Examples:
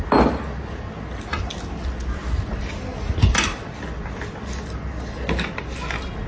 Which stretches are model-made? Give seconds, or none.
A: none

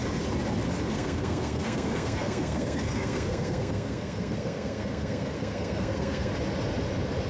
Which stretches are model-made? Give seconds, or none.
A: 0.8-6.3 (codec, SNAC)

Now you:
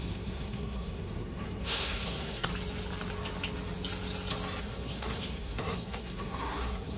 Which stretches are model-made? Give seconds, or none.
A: 0.0-2.5 (codec, SNAC); 4.6-7.0